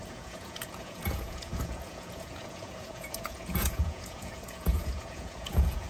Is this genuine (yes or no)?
no